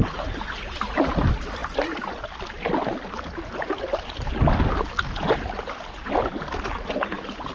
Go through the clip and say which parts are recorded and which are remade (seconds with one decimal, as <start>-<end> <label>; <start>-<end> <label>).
0.0-7.5 recorded